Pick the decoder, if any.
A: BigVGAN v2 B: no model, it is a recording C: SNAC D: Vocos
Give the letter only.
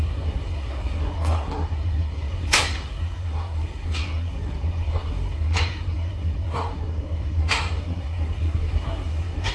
C